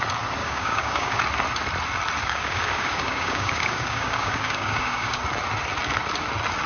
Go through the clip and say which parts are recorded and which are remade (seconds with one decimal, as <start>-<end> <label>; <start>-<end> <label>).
0.0-0.4 recorded; 0.4-1.2 remade; 1.2-2.2 recorded; 2.2-5.2 remade; 5.2-6.7 recorded